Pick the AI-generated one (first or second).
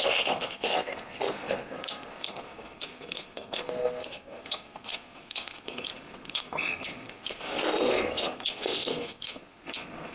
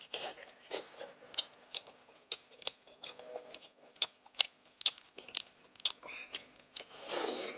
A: first